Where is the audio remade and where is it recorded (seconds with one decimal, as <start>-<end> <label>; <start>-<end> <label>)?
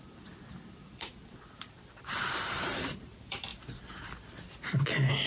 0.0-3.5 remade; 3.5-5.3 recorded